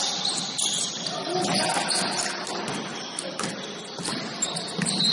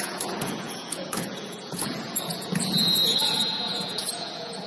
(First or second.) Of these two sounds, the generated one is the second